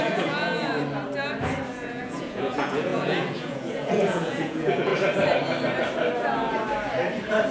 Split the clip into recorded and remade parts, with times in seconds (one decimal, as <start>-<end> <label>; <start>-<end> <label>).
0.0-0.7 remade; 0.7-1.7 recorded; 1.7-4.9 remade; 4.9-7.5 recorded